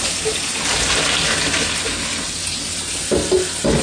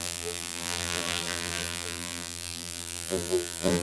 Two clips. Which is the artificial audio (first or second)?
second